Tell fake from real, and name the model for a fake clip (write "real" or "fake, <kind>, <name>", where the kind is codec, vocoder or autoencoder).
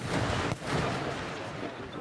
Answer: real